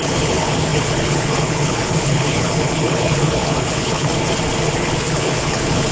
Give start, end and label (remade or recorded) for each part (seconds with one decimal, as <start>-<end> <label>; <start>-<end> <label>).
0.0-4.1 remade; 4.1-4.7 recorded; 4.7-5.9 remade